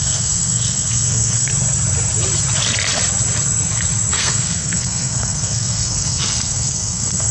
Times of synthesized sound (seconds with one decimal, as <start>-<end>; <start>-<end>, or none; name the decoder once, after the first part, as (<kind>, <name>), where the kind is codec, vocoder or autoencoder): 0.0-1.5 (codec, SNAC); 4.1-7.3